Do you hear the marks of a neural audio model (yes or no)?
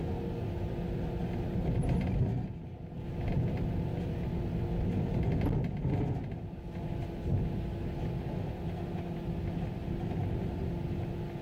no